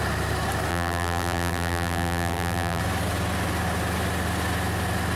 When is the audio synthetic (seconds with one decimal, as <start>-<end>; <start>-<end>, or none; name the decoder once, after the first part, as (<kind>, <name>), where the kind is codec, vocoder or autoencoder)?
0.7-2.8 (vocoder, BigVGAN v2)